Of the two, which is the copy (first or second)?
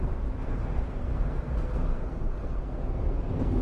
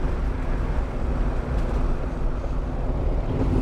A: first